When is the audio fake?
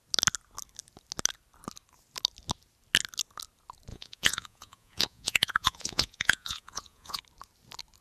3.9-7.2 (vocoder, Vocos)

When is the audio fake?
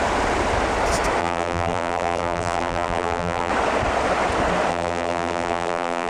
1.2-3.5 (vocoder, BigVGAN v2); 4.7-6.1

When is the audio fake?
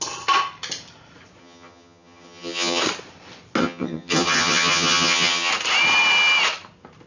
1.4-2.8 (vocoder, HiFi-GAN); 3.6-5.5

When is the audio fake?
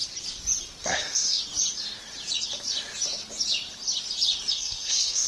0.8-1.4 (codec, SNAC); 4.5-5.3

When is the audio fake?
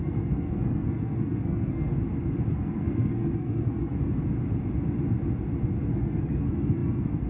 0.0-1.9 (codec, SNAC); 2.5-4.2; 5.8-7.3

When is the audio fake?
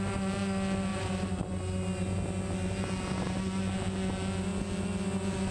0.9-1.5 (vocoder, BigVGAN v2)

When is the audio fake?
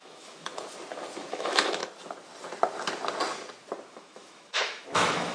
0.0-0.5 (autoencoder, DAC-VAE); 1.3-1.8; 3.9-5.3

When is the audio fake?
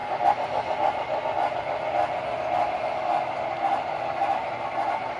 none